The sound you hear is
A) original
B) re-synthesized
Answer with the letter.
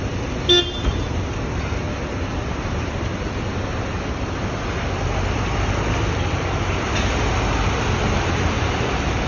A